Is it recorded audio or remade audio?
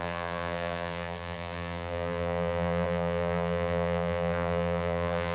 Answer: remade